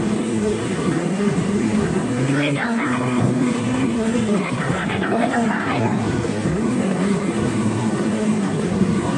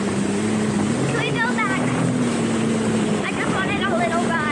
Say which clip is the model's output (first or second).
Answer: first